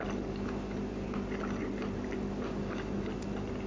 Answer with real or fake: real